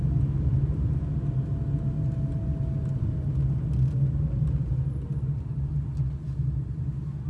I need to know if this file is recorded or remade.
recorded